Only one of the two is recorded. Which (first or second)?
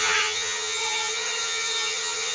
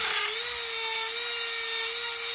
second